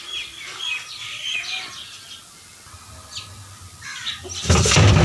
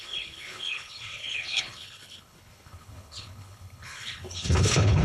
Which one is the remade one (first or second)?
second